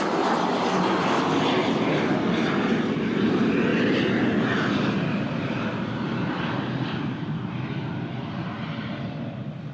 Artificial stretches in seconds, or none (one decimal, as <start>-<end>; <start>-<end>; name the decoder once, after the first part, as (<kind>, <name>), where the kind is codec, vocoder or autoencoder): none